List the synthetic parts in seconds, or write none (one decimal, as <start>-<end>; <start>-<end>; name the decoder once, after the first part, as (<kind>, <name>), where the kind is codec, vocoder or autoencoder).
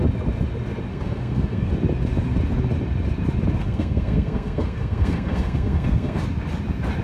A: 0.9-1.7 (codec, SNAC); 3.6-6.2